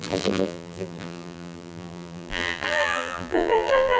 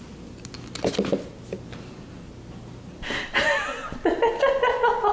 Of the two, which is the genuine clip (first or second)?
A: second